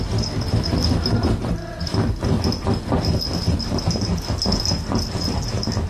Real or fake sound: real